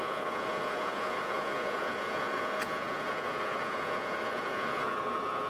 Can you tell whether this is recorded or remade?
remade